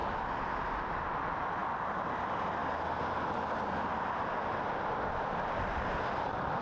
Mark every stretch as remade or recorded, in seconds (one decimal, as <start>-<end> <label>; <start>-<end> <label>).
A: 0.0-1.0 recorded; 1.0-1.6 remade; 1.6-2.2 recorded; 2.2-2.6 remade; 2.6-6.1 recorded; 6.1-6.6 remade